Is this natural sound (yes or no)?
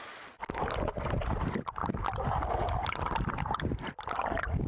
yes